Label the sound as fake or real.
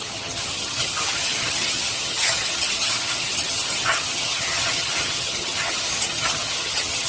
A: fake